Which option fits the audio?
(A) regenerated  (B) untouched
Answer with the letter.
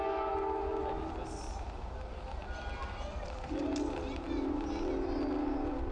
B